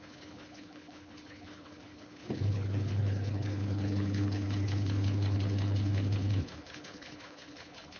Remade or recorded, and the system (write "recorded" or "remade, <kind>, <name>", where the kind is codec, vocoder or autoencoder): remade, codec, HILCodec